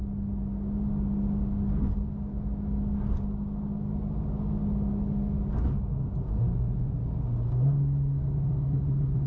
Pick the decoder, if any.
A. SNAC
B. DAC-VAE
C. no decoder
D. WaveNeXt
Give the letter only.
C